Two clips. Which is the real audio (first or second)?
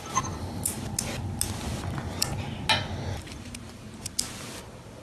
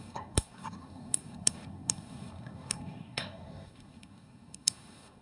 first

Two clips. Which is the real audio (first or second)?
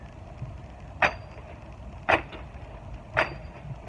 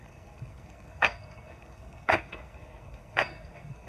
first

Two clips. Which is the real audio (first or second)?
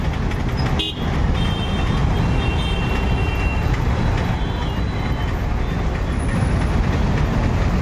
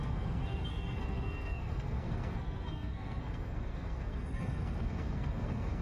first